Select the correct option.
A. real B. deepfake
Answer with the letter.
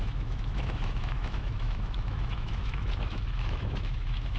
B